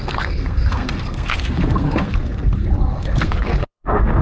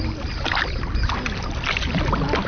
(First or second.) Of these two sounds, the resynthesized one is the first